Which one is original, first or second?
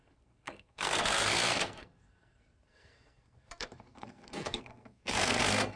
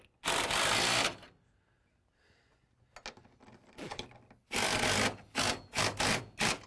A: second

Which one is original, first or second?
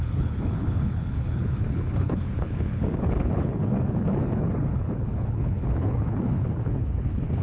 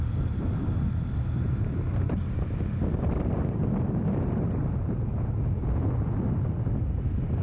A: second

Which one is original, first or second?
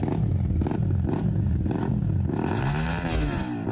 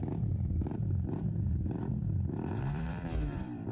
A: first